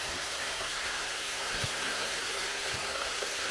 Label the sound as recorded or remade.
remade